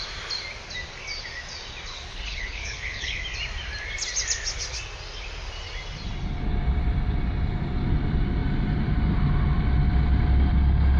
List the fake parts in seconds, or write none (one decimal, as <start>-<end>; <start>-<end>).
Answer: 1.9-3.2